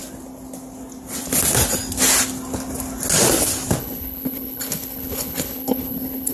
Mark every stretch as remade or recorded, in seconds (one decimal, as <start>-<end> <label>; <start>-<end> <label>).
0.0-3.8 recorded; 3.8-6.3 remade